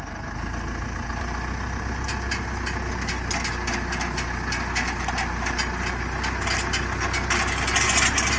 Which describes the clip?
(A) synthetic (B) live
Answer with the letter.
B